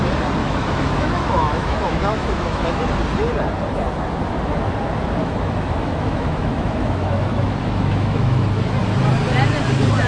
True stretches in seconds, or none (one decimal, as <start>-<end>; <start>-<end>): 0.0-0.4; 2.8-5.2; 8.4-10.1